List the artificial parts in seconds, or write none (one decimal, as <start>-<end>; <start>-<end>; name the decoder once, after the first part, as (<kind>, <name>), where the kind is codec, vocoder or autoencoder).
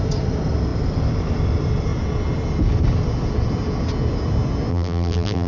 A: 4.7-5.5 (vocoder, BigVGAN v2)